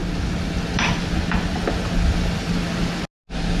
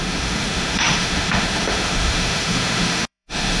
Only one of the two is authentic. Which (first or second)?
first